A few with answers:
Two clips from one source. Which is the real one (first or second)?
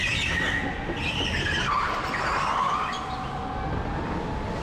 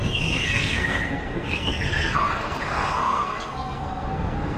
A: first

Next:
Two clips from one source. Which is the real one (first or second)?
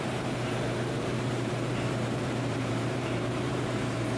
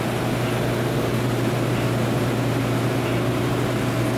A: second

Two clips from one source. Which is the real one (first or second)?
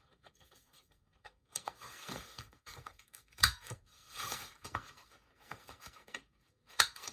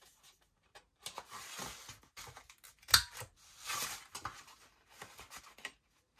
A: second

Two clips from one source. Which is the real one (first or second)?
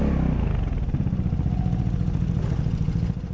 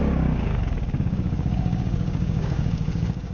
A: first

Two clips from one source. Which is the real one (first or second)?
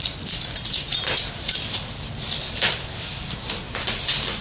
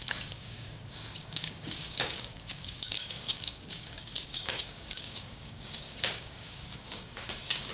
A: first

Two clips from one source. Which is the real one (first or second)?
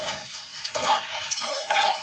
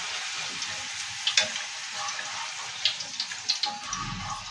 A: second